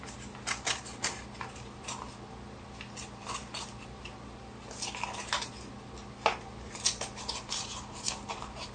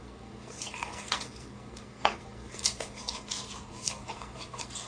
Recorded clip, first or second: first